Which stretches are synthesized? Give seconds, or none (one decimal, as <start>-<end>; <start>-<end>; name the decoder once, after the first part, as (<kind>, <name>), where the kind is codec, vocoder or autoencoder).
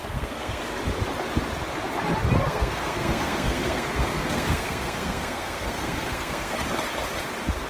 0.0-0.6 (codec, SNAC); 2.4-6.5